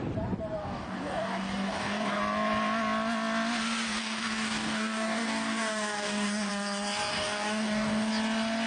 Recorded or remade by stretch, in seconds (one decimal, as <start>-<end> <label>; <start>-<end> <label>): 0.0-0.6 recorded; 0.6-2.2 remade; 2.2-4.0 recorded; 4.0-6.5 remade; 6.5-7.1 recorded; 7.1-8.1 remade; 8.1-8.7 recorded

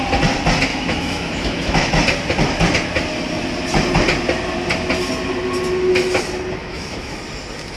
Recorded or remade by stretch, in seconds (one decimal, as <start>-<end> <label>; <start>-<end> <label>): 0.0-0.7 recorded; 0.7-1.9 remade; 1.9-6.6 recorded; 6.6-7.2 remade; 7.2-7.8 recorded

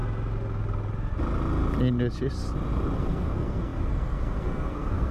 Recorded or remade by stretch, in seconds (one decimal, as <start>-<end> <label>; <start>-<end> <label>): 0.0-3.0 recorded; 3.0-5.1 remade

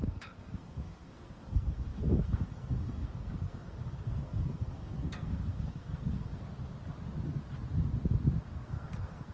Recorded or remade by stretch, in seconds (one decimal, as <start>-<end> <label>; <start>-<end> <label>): 0.0-6.5 remade; 6.5-8.4 recorded; 8.4-9.3 remade